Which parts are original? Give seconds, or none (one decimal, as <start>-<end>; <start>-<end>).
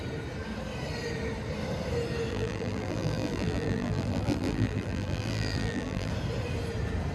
0.0-2.3; 6.1-7.1